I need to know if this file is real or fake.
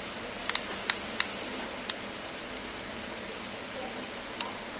real